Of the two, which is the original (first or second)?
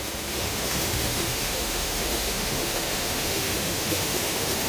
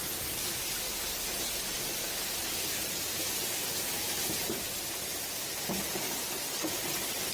second